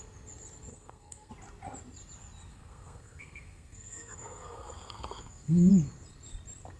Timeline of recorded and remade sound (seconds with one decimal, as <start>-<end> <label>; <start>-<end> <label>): 0.0-0.7 recorded; 0.7-1.3 remade; 1.3-2.5 recorded; 2.5-5.7 remade; 5.7-6.8 recorded